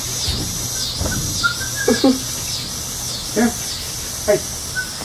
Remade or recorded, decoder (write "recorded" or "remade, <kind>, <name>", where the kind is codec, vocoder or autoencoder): recorded